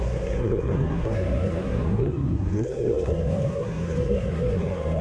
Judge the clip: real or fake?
fake